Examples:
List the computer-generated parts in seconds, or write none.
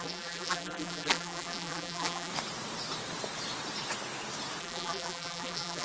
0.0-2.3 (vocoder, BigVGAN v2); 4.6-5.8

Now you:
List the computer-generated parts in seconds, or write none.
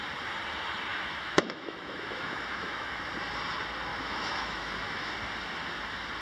0.9-3.0 (autoencoder, DAC-VAE); 3.9-5.1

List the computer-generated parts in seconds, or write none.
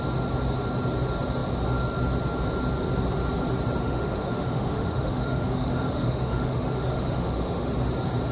3.8-7.7 (autoencoder, DAC-VAE)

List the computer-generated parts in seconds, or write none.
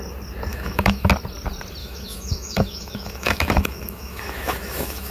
0.5-1.1 (autoencoder, DAC-VAE); 1.8-5.1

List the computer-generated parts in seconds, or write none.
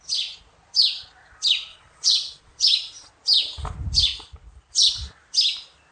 1.7-3.1 (vocoder, Vocos)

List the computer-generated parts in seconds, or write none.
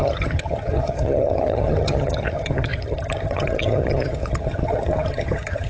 0.0-5.7 (vocoder, HiFi-GAN)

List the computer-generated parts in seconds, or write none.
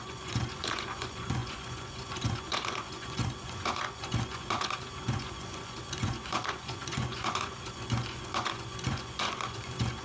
0.0-10.0 (vocoder, Vocos)